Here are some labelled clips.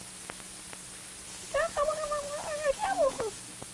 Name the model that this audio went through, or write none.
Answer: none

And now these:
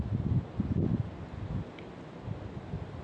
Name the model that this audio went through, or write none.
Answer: none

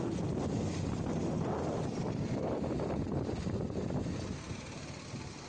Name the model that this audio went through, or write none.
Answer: none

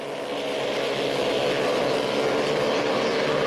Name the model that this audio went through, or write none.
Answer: none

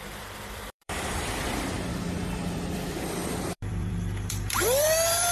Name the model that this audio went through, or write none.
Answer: vocoder, BigVGAN v2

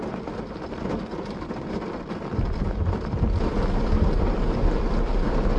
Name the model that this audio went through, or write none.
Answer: vocoder, BigVGAN v2